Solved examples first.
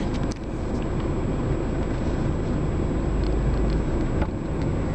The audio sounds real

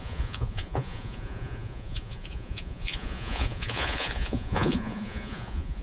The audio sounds fake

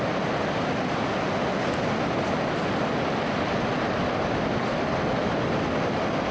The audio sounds real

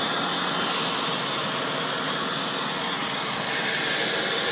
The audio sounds real